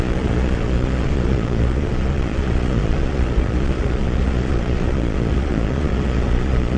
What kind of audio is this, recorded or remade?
remade